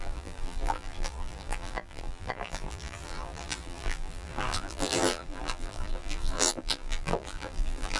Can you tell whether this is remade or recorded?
remade